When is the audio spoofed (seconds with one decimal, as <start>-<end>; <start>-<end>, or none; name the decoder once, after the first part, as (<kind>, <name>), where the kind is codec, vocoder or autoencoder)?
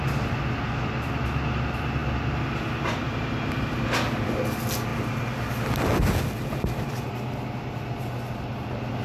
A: none